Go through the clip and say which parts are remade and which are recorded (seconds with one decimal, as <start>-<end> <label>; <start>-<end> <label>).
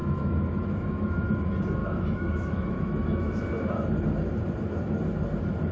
0.0-1.3 remade; 1.3-1.8 recorded; 1.8-3.3 remade; 3.3-5.7 recorded